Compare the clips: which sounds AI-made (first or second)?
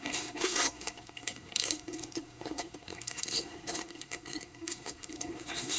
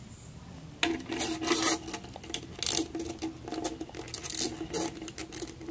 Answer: first